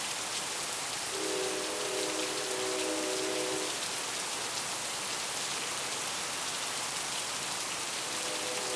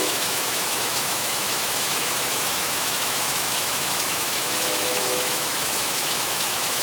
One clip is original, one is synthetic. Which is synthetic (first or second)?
second